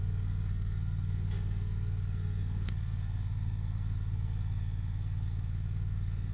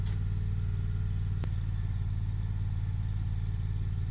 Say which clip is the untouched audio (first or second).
second